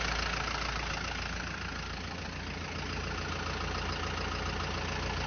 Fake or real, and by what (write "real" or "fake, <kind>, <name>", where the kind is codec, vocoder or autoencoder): real